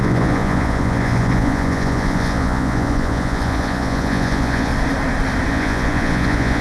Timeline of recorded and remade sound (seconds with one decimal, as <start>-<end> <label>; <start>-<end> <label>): 0.0-4.7 remade; 4.7-5.5 recorded; 5.5-6.6 remade